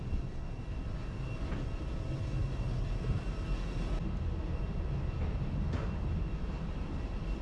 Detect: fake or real real